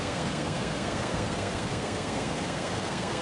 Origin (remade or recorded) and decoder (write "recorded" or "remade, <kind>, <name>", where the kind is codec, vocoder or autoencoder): remade, codec, SNAC